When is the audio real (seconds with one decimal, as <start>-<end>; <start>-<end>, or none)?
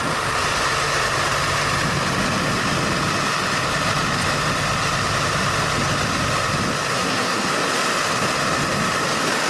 0.0-6.9; 7.5-9.5